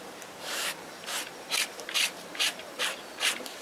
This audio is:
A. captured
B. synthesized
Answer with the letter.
B